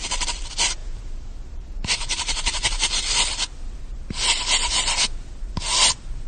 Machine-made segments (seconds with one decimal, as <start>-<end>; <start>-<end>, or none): 0.8-2.9